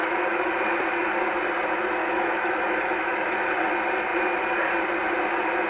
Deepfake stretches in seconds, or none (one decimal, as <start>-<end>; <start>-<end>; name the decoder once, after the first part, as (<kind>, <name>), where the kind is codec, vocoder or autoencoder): 0.0-0.6 (autoencoder, DAC-VAE); 2.0-3.5